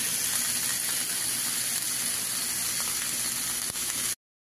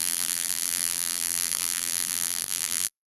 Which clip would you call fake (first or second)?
second